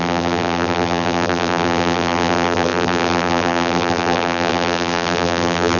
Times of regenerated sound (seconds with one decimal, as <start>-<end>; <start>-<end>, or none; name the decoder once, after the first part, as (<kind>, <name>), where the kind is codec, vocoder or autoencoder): 0.0-5.8 (vocoder, BigVGAN v2)